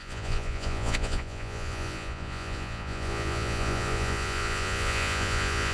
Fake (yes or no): yes